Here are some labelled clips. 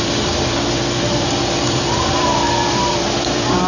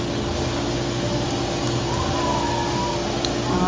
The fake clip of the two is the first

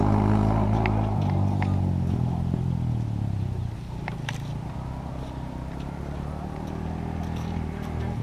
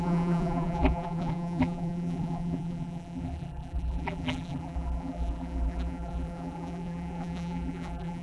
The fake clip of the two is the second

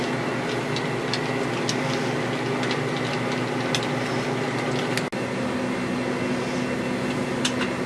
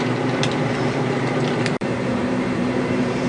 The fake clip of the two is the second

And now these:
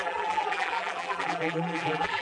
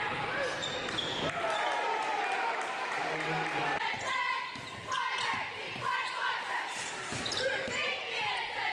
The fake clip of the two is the first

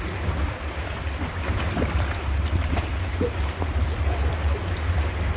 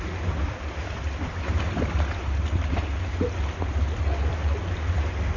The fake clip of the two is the first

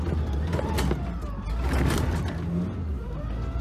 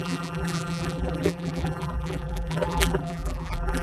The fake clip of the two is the second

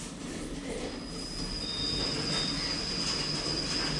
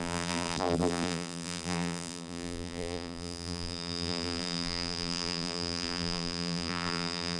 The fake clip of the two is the second